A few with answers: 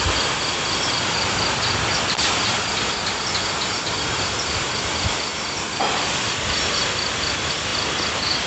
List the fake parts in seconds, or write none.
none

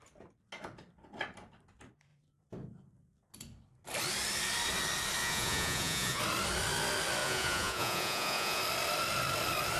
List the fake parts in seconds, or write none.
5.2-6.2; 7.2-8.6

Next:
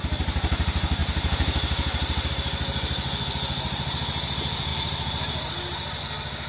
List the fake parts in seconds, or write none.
1.0-2.3; 4.7-6.0